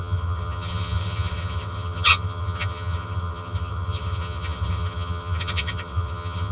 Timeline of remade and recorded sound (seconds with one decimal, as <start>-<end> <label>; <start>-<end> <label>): 0.0-6.5 remade